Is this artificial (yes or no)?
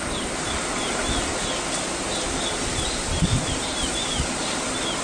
no